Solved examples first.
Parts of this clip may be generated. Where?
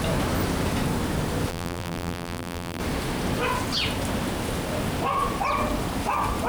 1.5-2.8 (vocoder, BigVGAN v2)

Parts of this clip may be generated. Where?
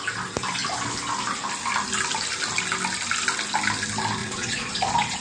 4.2-5.2 (vocoder, Vocos)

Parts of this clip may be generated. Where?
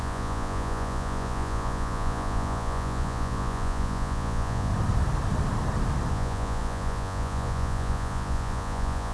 0.0-4.7 (vocoder, Vocos); 6.1-9.1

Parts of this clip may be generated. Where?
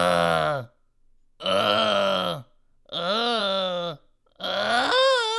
none